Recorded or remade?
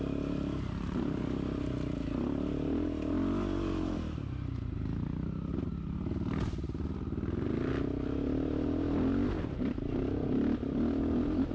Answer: recorded